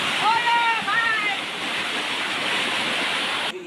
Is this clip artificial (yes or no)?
no